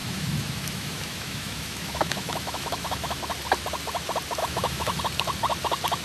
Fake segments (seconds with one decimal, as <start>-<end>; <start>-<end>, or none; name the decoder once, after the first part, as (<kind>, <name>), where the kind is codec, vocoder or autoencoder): 0.0-3.2 (autoencoder, DAC-VAE); 4.4-5.0